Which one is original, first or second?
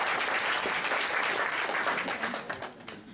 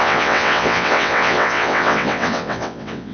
first